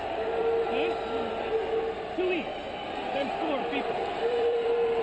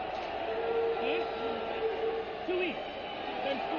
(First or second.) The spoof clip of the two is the first